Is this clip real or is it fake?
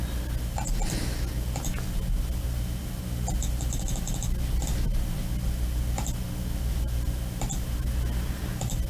real